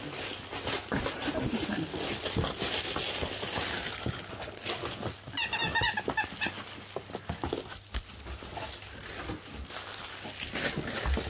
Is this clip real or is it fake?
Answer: real